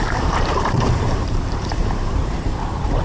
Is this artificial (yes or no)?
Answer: yes